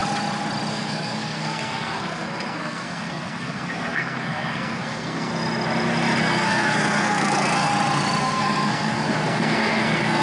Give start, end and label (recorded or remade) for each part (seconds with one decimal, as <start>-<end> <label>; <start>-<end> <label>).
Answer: 0.0-0.7 recorded; 0.7-5.3 remade; 5.3-6.2 recorded; 6.2-7.7 remade; 7.7-8.2 recorded; 8.2-10.2 remade

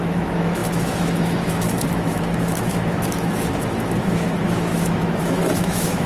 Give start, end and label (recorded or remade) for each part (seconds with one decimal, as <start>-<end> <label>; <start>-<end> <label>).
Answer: 0.0-6.1 remade

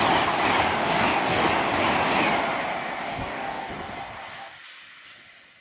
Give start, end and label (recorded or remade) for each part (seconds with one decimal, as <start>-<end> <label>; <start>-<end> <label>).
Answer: 0.0-0.8 recorded; 0.8-1.4 remade; 1.4-3.1 recorded; 3.1-3.7 remade; 3.7-5.6 recorded

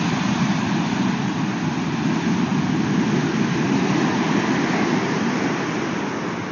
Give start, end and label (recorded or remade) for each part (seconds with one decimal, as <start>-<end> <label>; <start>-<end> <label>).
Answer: 0.0-6.5 recorded

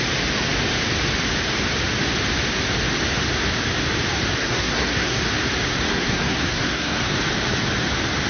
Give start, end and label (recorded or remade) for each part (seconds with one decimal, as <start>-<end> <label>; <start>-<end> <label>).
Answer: 0.0-4.4 recorded; 4.4-5.2 remade; 5.2-5.9 recorded; 5.9-7.1 remade; 7.1-8.3 recorded